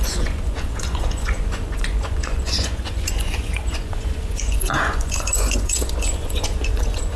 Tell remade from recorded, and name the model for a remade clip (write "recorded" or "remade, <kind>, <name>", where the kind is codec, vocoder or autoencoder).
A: remade, vocoder, Vocos